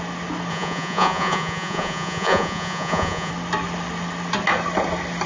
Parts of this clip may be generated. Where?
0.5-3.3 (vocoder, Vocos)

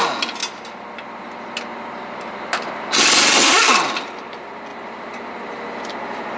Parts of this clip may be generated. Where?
none

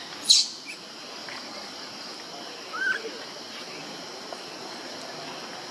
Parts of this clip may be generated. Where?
1.2-2.2 (vocoder, BigVGAN v2); 3.8-5.1